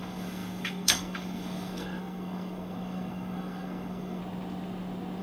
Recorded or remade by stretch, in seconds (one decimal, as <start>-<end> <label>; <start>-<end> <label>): 0.0-4.2 remade; 4.2-5.2 recorded